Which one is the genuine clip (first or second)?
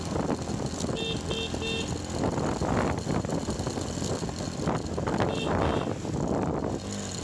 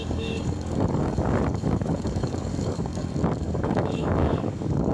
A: first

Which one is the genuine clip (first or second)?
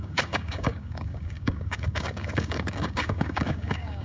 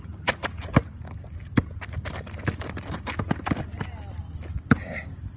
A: second